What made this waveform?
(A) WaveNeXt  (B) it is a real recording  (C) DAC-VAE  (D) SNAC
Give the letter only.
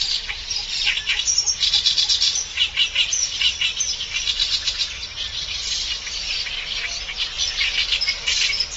B